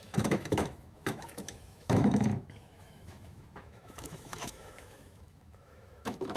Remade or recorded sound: remade